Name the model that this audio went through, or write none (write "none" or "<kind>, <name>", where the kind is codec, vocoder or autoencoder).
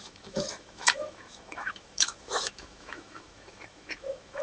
autoencoder, DAC-VAE